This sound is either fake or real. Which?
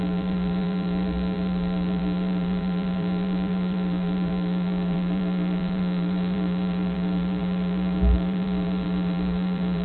fake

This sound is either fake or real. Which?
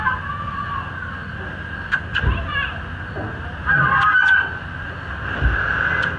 real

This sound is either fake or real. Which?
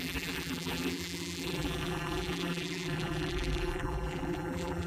fake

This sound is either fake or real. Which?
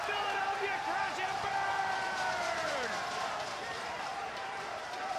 fake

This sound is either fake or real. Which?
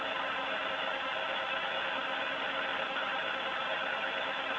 real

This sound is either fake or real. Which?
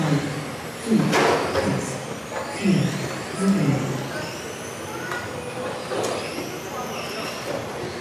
real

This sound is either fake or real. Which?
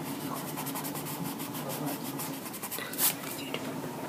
fake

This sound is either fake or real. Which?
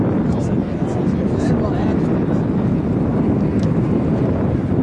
real